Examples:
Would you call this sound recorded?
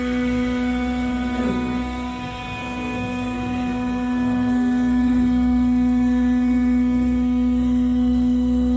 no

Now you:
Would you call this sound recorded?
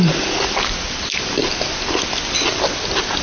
yes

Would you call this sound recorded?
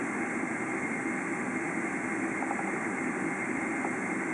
yes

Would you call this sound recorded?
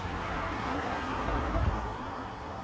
no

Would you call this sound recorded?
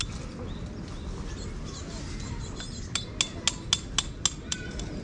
yes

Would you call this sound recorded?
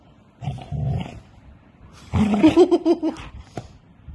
yes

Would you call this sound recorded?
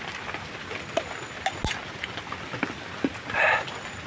yes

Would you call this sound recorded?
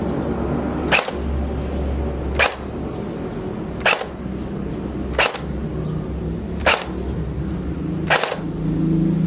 yes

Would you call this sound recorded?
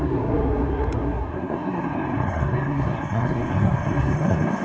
no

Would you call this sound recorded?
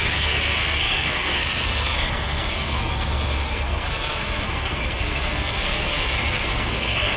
no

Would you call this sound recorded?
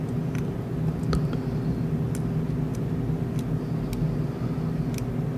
yes